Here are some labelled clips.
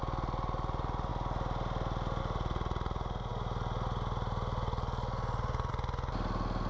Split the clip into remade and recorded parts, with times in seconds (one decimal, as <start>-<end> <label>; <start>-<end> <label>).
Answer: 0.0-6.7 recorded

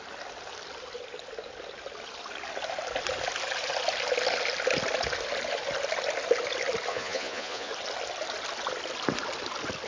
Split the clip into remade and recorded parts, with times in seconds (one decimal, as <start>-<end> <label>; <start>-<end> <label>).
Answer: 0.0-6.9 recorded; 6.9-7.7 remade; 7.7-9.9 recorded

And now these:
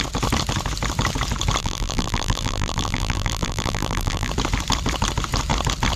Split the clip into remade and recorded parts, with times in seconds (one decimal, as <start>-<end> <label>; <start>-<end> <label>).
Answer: 0.0-1.6 recorded; 1.6-4.3 remade; 4.3-6.0 recorded

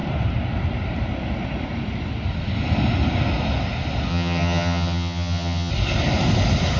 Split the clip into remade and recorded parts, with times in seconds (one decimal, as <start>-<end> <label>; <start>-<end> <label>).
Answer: 0.0-4.1 recorded; 4.1-5.7 remade; 5.7-6.8 recorded

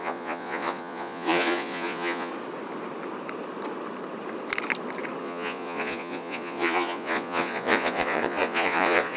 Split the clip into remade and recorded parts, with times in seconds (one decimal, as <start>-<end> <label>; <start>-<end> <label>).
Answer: 0.0-2.3 remade; 2.3-5.2 recorded; 5.2-9.2 remade